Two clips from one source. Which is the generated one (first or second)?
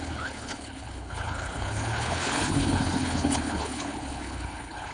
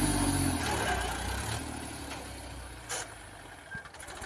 first